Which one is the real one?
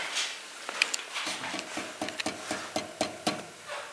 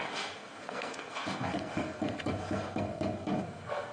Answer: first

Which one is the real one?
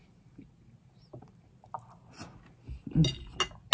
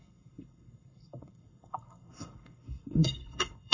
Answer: first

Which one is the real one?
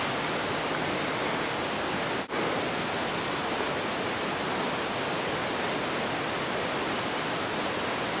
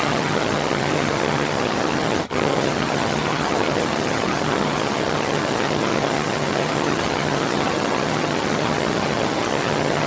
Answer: first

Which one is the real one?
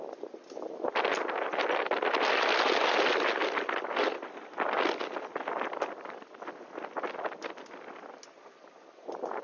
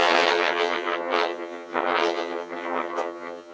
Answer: first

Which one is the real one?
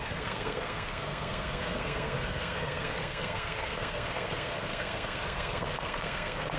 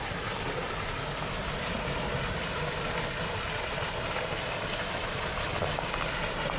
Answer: second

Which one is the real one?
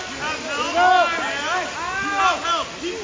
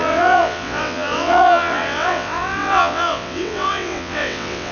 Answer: first